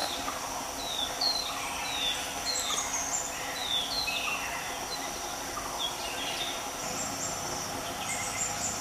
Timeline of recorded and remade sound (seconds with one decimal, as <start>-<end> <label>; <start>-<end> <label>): 0.0-1.5 remade; 1.5-8.8 recorded